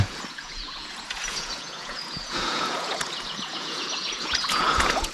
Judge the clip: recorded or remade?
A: remade